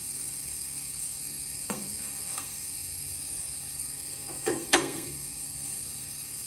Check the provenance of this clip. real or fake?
fake